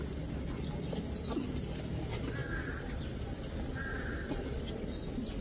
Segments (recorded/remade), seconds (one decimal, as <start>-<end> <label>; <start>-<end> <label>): 0.0-2.4 recorded; 2.4-4.6 remade; 4.6-5.4 recorded